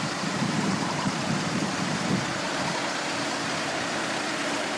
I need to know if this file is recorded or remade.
remade